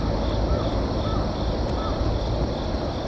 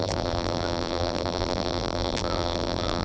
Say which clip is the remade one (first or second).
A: second